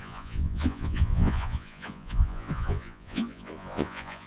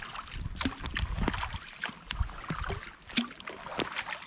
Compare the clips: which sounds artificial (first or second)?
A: first